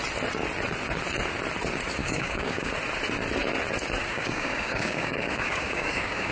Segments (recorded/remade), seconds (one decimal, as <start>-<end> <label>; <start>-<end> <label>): 0.0-2.0 recorded; 2.0-2.7 remade; 2.7-4.1 recorded; 4.1-6.3 remade